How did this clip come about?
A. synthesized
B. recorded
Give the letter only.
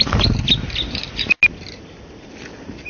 B